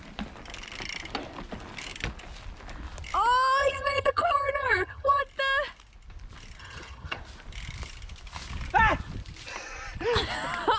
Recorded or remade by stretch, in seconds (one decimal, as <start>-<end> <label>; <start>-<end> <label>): 0.0-3.6 recorded; 3.6-5.2 remade; 5.2-6.6 recorded; 6.6-7.2 remade; 7.2-10.8 recorded